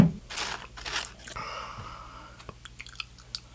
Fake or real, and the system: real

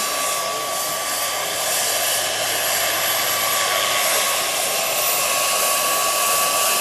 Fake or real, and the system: real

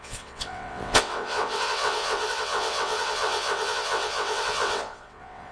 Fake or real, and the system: fake, vocoder, WaveNeXt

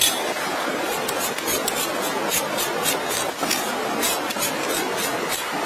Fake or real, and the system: real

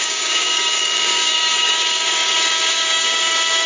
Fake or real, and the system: fake, codec, DAC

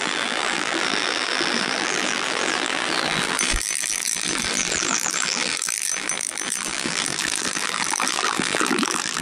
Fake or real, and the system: fake, vocoder, BigVGAN v2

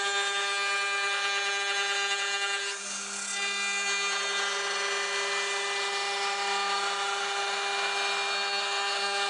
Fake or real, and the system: real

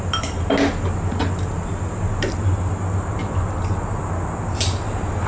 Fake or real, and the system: real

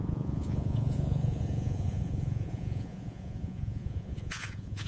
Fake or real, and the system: fake, vocoder, Vocos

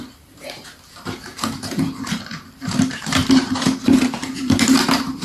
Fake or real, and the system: fake, vocoder, BigVGAN v2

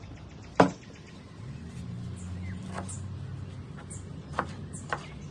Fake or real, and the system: real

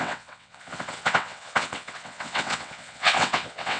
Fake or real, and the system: fake, vocoder, WaveNeXt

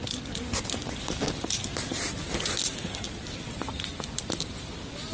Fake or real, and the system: real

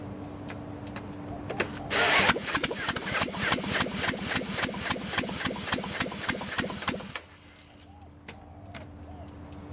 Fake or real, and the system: real